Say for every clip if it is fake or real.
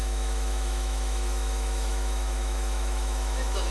fake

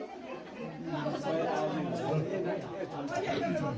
real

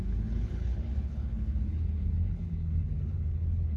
fake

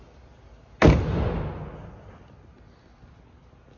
real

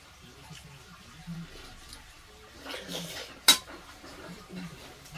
real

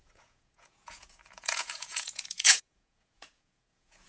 fake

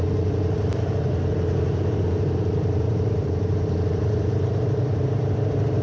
fake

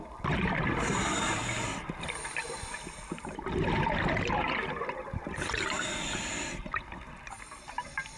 real